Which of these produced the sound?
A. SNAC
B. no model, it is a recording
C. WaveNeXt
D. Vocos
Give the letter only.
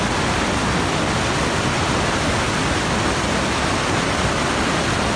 B